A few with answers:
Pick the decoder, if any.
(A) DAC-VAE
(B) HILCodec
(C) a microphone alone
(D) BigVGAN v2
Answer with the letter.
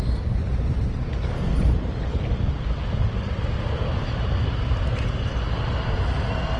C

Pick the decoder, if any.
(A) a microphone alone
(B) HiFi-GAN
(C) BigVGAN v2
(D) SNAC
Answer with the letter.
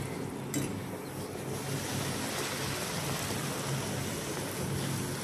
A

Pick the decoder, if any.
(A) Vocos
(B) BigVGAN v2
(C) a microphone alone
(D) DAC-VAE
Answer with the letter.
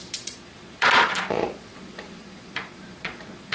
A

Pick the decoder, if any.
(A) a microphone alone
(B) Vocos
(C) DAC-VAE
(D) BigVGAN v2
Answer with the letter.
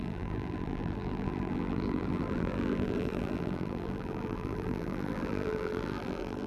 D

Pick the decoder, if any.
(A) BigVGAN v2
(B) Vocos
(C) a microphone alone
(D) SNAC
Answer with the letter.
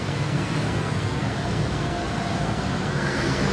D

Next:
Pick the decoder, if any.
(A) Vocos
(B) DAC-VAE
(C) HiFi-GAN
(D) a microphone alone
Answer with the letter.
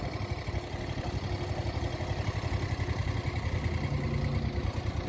D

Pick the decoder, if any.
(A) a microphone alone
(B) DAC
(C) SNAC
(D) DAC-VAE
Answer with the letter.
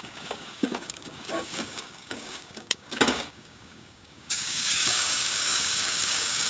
B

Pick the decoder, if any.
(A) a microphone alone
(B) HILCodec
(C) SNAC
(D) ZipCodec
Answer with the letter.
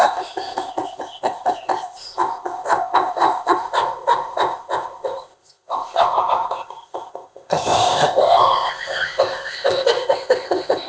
D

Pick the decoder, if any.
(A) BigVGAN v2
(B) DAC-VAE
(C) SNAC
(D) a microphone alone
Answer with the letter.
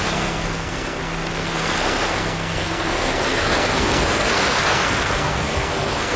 C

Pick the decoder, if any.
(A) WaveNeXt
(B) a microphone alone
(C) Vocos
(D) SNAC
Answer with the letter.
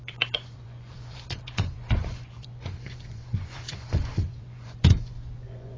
C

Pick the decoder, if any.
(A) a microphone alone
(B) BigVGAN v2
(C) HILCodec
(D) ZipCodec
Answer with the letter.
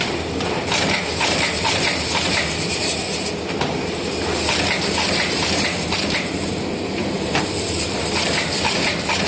B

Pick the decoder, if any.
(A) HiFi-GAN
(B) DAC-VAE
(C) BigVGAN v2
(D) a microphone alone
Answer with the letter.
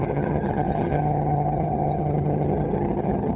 A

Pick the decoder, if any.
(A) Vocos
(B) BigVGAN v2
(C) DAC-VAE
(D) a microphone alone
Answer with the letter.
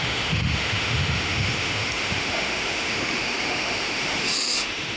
C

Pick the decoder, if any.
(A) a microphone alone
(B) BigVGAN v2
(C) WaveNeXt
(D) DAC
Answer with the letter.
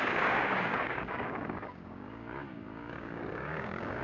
D